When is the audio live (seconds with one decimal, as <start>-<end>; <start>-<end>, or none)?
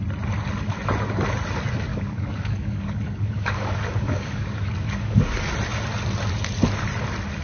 0.0-1.9; 5.4-7.4